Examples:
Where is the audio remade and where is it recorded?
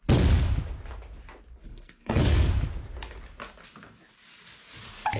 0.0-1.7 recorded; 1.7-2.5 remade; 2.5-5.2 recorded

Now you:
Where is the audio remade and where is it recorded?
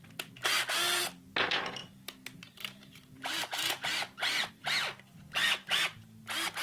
0.0-1.8 recorded; 1.8-4.5 remade; 4.5-6.6 recorded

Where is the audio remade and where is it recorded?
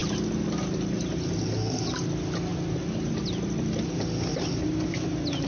0.0-5.5 recorded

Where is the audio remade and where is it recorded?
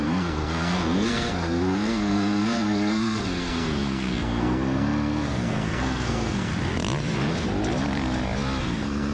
0.0-6.5 remade; 6.5-8.6 recorded; 8.6-9.1 remade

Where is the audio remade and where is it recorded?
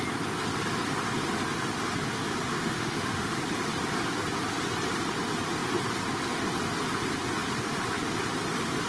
0.0-2.5 recorded; 2.5-3.4 remade; 3.4-8.9 recorded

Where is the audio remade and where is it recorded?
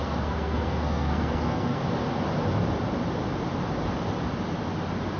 0.0-1.8 remade; 1.8-5.2 recorded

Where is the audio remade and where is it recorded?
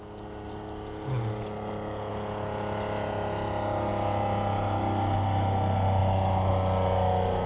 0.0-7.5 recorded